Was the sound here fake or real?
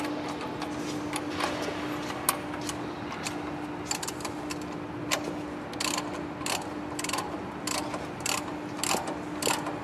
real